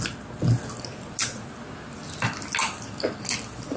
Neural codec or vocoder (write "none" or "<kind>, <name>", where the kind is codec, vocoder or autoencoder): none